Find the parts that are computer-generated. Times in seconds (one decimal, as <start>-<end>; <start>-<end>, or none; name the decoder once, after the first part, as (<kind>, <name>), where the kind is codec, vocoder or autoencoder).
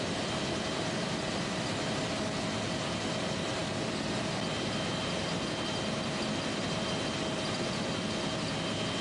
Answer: 3.6-5.5 (vocoder, BigVGAN v2)